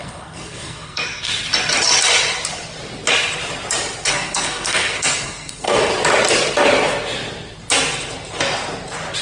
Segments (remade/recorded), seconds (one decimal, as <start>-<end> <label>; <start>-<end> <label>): 0.0-1.3 remade; 1.3-4.1 recorded; 4.1-5.9 remade; 5.9-9.2 recorded